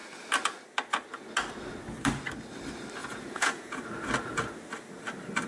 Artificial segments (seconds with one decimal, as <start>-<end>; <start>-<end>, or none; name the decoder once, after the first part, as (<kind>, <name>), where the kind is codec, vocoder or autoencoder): 3.0-3.8 (vocoder, Vocos)